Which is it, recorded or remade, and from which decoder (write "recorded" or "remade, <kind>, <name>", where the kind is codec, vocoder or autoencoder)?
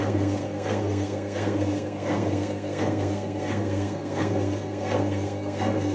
remade, codec, SNAC